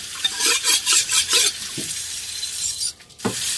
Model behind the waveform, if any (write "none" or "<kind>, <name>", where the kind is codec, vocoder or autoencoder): vocoder, BigVGAN v2